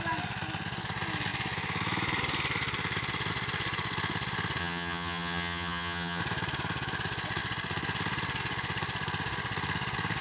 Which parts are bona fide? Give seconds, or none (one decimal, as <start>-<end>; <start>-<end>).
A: 0.0-4.6; 6.2-10.2